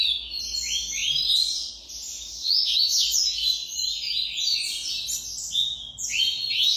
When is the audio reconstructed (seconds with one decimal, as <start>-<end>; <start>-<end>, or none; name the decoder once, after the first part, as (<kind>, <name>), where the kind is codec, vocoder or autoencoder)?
1.0-1.7 (vocoder, BigVGAN v2)